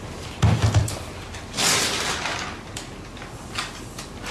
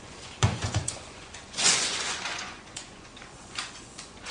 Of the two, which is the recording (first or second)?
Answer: first